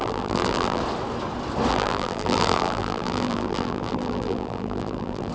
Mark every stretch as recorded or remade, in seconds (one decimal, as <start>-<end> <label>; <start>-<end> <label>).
0.0-0.8 remade; 0.8-1.7 recorded; 1.7-5.3 remade